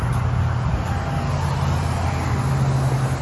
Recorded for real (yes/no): yes